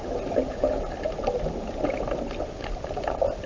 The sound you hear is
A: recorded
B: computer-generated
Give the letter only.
A